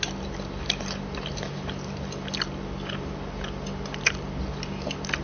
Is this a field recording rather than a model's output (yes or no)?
yes